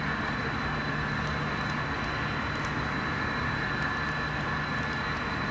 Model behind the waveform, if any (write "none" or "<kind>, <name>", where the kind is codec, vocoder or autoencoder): none